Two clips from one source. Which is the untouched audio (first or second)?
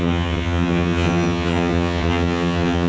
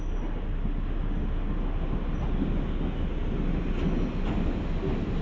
second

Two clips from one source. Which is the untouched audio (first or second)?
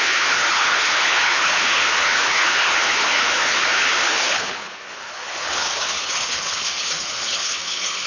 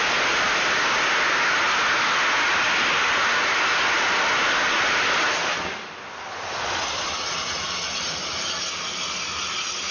second